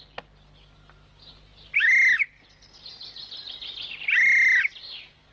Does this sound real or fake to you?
real